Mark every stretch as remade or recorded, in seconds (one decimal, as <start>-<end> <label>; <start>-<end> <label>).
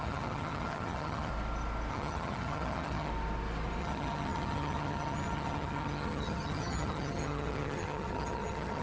0.0-1.3 remade; 1.3-1.9 recorded; 1.9-3.1 remade; 3.1-3.8 recorded; 3.8-8.8 remade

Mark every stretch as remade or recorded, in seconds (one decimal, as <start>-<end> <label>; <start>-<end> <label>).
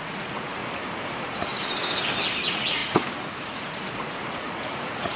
0.0-0.6 remade; 0.6-1.1 recorded; 1.1-1.5 remade; 1.5-2.4 recorded; 2.4-5.2 remade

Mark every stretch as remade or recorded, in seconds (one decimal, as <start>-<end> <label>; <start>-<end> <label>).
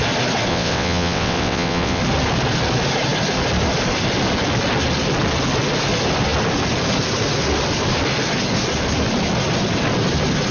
0.0-0.5 recorded; 0.5-2.0 remade; 2.0-10.5 recorded